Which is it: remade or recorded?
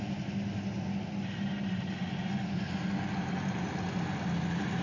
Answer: recorded